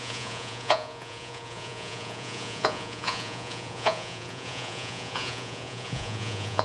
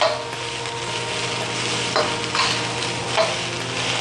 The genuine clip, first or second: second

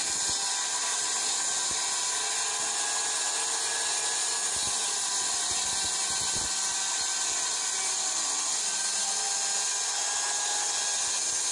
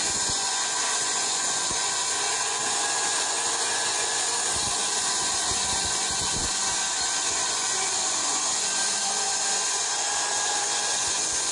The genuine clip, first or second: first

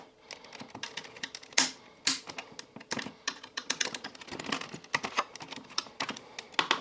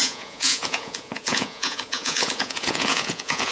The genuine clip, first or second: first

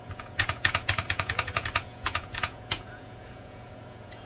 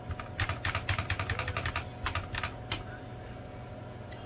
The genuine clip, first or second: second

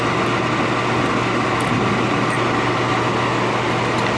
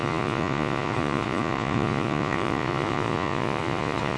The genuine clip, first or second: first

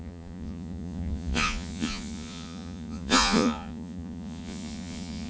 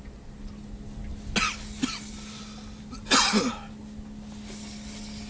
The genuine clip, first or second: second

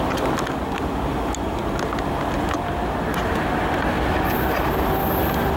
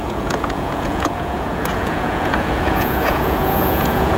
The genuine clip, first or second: first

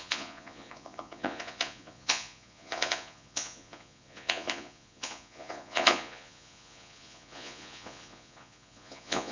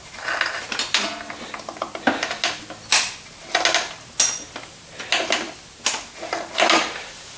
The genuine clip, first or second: second